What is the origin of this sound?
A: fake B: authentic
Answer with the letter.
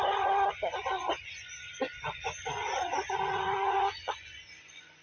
A